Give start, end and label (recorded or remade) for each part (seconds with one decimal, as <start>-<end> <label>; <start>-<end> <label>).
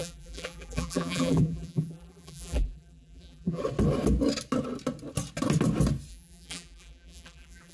0.0-3.6 remade; 3.6-6.1 recorded; 6.1-7.7 remade